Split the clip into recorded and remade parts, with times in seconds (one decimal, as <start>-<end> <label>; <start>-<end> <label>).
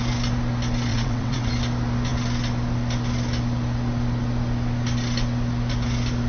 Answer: 0.0-0.9 recorded; 0.9-1.5 remade; 1.5-6.3 recorded